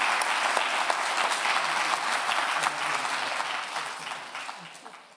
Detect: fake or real real